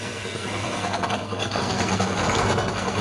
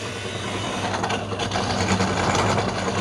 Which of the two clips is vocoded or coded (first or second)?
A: first